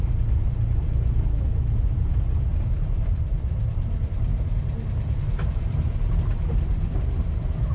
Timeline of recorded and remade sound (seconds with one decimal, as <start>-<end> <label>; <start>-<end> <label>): 0.0-4.3 remade; 4.3-5.1 recorded; 5.1-7.7 remade